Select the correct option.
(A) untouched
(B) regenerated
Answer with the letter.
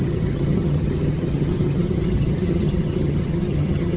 B